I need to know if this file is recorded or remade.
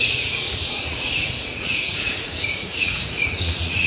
remade